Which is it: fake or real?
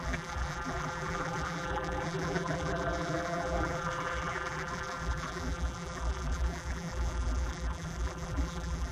fake